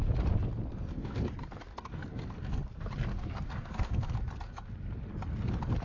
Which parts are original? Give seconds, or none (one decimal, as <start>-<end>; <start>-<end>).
0.0-0.7; 1.2-1.7; 2.6-3.1; 4.1-5.8